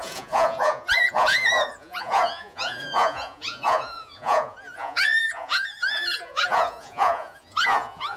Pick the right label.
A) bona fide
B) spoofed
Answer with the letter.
B